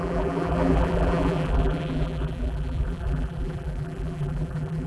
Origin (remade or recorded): remade